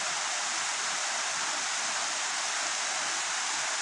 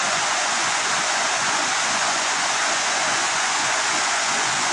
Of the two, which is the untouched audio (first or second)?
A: first